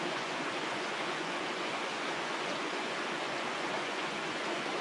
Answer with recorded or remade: remade